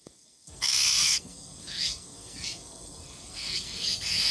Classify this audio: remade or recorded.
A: remade